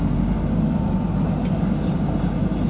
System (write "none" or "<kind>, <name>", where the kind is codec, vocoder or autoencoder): none